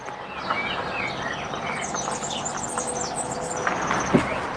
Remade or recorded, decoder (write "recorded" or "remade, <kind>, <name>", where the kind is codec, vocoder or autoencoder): recorded